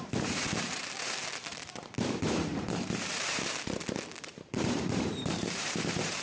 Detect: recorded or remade remade